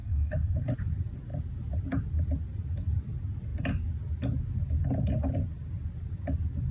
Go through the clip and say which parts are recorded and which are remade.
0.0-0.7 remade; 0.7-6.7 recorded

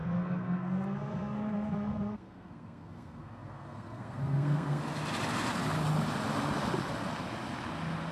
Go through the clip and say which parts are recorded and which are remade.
0.0-4.8 remade; 4.8-8.1 recorded

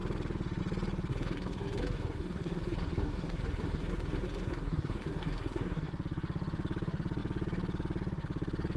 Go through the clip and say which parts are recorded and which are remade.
0.0-1.1 recorded; 1.1-5.9 remade; 5.9-8.8 recorded

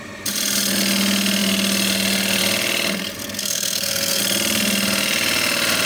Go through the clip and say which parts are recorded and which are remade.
0.0-3.4 recorded; 3.4-4.2 remade; 4.2-5.9 recorded

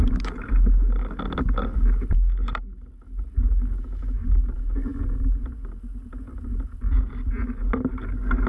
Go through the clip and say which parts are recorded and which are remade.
0.0-8.5 recorded

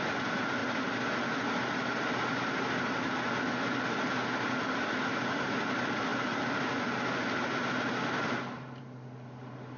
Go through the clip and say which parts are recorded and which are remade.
0.0-9.8 recorded

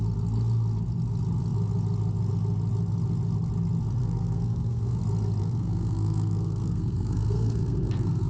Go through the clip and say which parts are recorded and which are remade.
0.0-4.0 recorded; 4.0-5.0 remade; 5.0-5.4 recorded; 5.4-8.3 remade